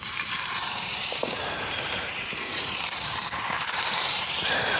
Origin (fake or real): fake